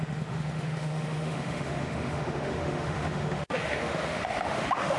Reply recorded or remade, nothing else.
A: remade